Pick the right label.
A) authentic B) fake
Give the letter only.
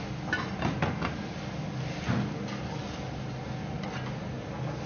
A